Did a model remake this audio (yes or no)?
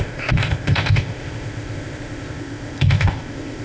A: yes